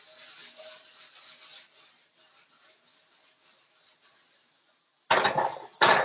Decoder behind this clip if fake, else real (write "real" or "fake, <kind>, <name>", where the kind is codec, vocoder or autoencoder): real